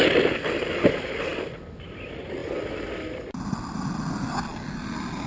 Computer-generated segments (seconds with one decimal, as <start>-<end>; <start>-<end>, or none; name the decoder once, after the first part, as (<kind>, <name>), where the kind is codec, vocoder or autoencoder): none